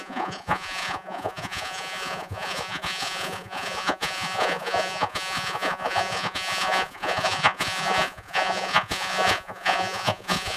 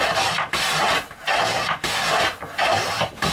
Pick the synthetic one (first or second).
first